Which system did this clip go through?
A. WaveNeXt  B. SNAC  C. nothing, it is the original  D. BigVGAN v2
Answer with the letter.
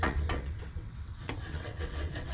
A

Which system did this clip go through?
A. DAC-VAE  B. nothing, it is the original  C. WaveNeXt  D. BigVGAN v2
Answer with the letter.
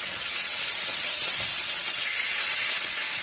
C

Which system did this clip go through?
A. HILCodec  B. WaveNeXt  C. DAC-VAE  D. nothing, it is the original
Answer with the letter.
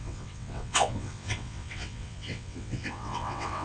B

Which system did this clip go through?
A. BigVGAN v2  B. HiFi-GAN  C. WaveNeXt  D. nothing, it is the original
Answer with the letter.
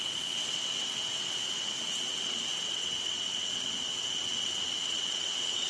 C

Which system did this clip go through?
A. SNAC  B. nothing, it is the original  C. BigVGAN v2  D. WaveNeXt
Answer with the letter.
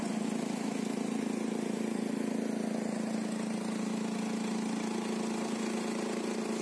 B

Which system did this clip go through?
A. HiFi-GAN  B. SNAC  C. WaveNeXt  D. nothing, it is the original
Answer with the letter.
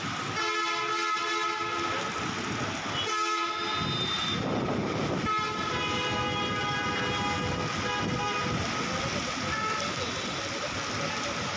D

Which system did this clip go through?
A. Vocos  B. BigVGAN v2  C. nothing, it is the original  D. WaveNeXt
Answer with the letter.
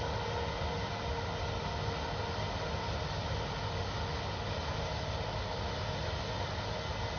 C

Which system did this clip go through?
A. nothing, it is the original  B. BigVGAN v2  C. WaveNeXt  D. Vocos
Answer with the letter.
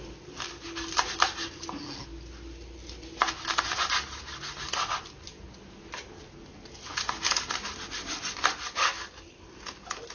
A